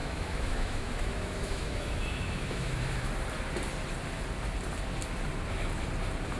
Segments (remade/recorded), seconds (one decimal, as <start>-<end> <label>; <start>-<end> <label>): 0.0-3.1 remade; 3.1-6.4 recorded